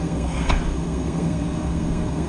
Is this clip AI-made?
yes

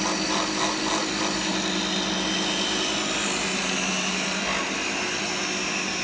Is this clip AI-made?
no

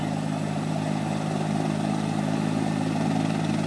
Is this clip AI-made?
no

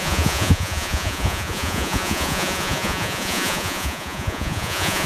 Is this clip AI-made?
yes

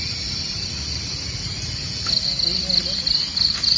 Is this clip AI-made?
no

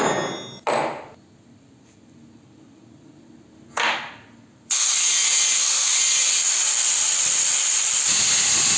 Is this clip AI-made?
no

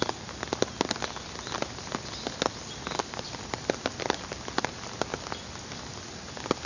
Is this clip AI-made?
no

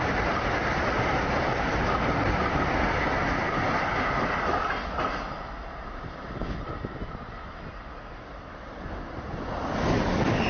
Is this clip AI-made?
no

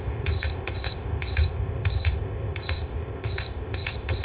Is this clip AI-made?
yes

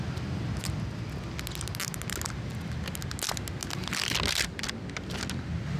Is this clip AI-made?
no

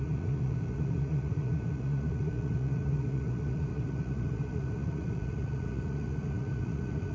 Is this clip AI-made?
yes